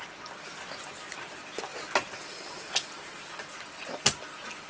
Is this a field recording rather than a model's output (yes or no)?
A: yes